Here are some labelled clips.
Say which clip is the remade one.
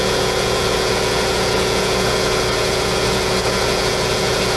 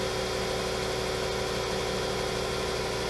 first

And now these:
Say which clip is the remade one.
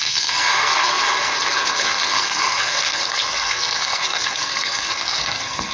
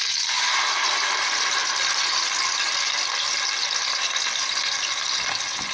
first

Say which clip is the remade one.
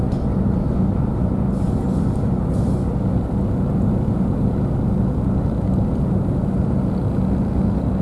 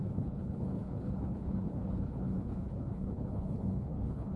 second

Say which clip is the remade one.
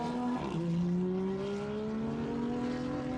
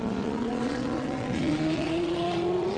second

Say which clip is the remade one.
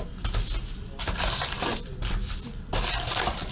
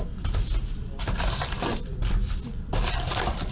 second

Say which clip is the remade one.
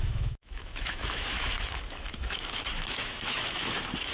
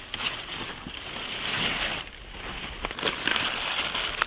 first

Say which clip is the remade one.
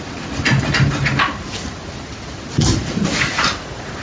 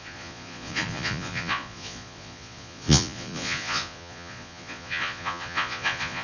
second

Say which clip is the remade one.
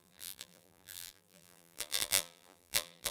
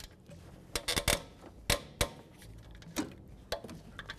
first